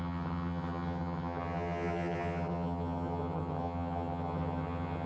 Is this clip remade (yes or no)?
yes